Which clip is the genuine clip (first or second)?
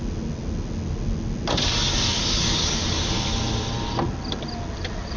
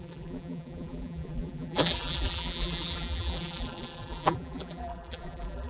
first